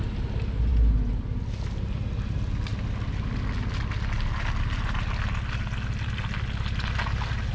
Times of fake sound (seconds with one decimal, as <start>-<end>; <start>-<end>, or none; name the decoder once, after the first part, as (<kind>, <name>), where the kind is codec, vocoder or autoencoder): none